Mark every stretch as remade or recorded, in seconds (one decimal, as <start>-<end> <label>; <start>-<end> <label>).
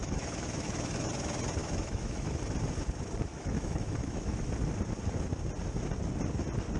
0.0-1.1 remade; 1.1-1.6 recorded; 1.6-2.4 remade; 2.4-3.3 recorded; 3.3-4.5 remade; 4.5-6.8 recorded